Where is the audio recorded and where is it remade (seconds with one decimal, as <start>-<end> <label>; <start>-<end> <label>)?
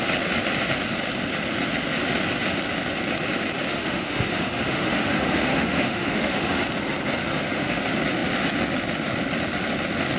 0.0-3.7 recorded; 3.7-6.6 remade; 6.6-7.3 recorded; 7.3-7.8 remade; 7.8-10.2 recorded